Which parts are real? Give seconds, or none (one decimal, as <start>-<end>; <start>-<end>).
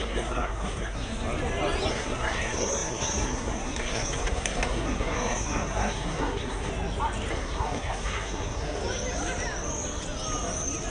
1.1-1.9; 6.7-7.3; 8.8-10.9